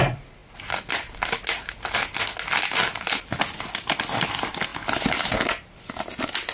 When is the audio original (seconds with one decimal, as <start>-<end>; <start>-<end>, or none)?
0.0-6.5